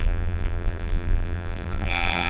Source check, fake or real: fake